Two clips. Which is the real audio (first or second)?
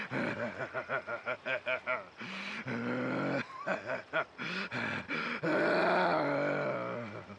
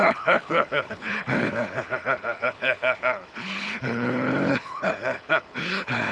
first